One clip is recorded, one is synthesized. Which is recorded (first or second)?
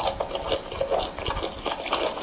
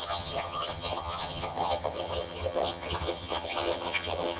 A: first